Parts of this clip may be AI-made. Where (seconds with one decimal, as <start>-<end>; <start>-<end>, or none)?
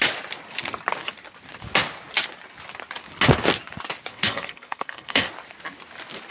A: 4.1-5.3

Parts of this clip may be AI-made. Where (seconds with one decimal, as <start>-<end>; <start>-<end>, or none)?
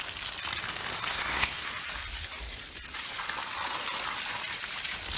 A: 1.1-1.7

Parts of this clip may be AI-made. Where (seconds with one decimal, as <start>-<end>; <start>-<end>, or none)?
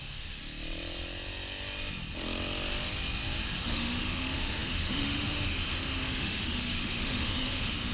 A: 0.0-0.4; 3.6-7.9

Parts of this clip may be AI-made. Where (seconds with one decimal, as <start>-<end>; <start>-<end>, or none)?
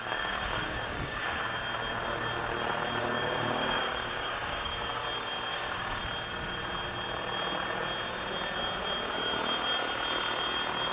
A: 0.0-1.2; 3.0-4.7; 5.5-6.0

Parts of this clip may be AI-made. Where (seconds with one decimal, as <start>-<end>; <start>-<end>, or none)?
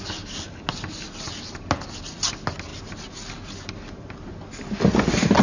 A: 2.7-3.3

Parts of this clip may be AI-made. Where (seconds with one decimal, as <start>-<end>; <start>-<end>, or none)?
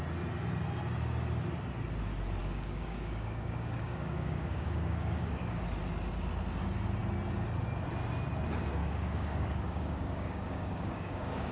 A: 2.4-5.6; 8.8-11.5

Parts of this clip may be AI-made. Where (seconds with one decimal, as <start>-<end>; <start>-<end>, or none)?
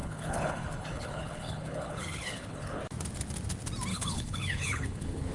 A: 0.0-2.8; 3.9-5.3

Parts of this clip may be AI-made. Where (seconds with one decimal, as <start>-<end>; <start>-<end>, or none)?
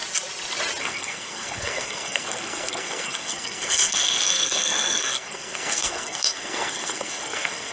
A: 0.8-7.7